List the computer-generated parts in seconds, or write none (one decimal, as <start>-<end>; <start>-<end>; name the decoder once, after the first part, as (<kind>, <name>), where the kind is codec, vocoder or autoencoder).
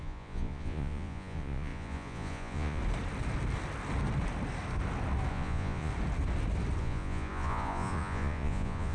0.0-2.8 (vocoder, Vocos); 5.3-5.9; 6.8-8.9